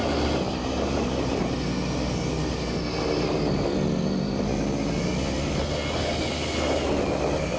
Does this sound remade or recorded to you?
recorded